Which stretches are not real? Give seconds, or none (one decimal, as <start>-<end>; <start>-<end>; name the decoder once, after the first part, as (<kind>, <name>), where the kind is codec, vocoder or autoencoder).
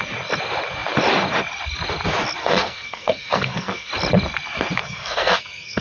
2.4-3.9 (codec, SNAC); 4.8-5.8